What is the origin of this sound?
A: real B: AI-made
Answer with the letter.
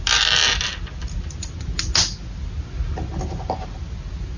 A